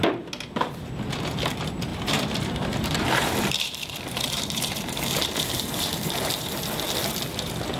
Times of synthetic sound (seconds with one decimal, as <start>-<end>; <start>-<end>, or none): 1.9-6.6